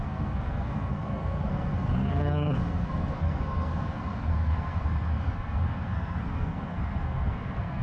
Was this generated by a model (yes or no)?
yes